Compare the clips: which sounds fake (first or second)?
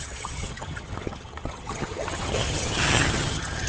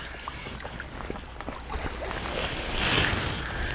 first